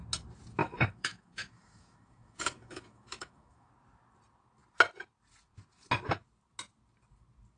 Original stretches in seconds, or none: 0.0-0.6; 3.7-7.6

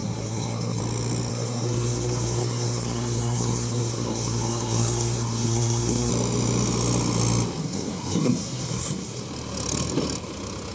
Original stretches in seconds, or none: 0.8-1.3; 6.1-7.6; 9.2-10.7

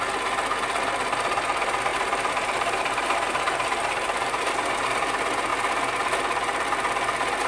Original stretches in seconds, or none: 0.0-1.9; 4.8-7.5